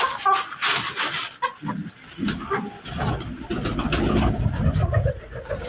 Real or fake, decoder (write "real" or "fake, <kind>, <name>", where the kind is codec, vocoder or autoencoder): real